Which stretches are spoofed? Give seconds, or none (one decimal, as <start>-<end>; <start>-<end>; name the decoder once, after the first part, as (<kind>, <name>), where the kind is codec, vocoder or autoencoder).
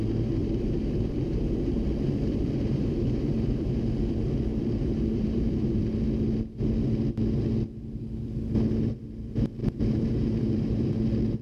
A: 0.4-3.7 (vocoder, BigVGAN v2); 4.5-5.8; 9.6-10.9